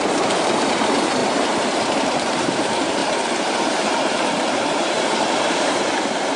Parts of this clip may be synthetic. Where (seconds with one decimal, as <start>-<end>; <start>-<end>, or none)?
0.0-6.4